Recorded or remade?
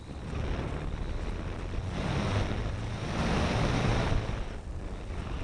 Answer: remade